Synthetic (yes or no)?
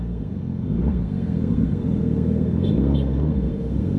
yes